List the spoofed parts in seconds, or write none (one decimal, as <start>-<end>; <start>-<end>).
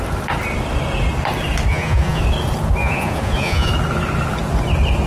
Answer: 1.7-2.2; 2.8-3.7